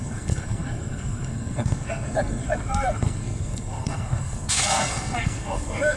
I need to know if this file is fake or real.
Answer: fake